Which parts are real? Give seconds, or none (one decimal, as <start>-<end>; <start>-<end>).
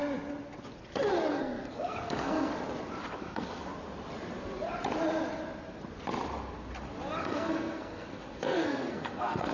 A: 0.0-1.3; 2.5-3.2; 3.7-7.2